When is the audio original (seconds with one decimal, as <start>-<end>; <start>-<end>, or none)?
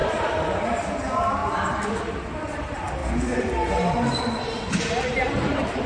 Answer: 0.9-1.4; 2.0-5.9